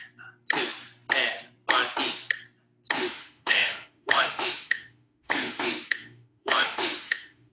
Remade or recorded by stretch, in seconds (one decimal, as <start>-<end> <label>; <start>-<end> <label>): 0.0-3.0 recorded; 3.0-7.5 remade

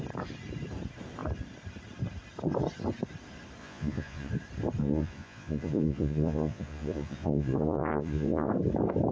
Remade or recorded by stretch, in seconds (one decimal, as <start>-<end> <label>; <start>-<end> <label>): 0.0-3.6 recorded; 3.6-4.3 remade; 4.3-4.8 recorded; 4.8-8.5 remade; 8.5-9.1 recorded

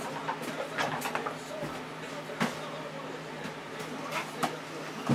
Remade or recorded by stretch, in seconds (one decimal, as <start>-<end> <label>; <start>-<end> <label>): 0.0-5.1 recorded

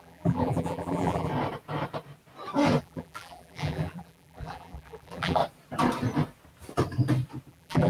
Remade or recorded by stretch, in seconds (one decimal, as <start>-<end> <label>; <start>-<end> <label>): 0.0-1.3 remade; 1.3-2.8 recorded; 2.8-5.4 remade; 5.4-7.5 recorded; 7.5-7.9 remade

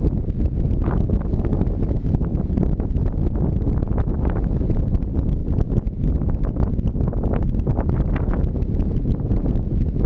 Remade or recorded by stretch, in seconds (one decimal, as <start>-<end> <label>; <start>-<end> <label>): 0.0-10.1 recorded

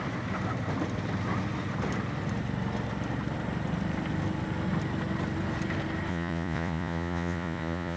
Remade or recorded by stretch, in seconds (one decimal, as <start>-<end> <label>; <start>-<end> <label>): 0.0-6.1 recorded; 6.1-8.0 remade